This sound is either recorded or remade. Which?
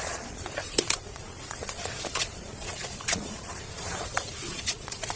remade